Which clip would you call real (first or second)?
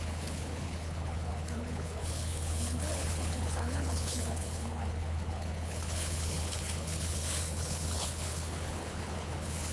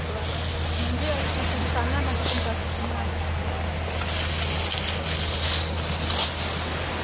second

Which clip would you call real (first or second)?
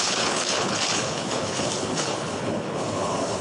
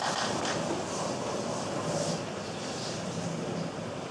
second